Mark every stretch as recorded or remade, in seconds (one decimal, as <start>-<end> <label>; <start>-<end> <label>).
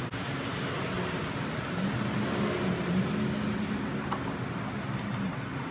0.0-5.7 recorded